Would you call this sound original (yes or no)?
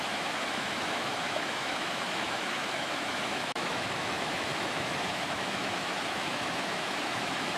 no